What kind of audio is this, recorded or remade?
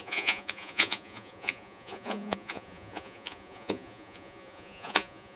remade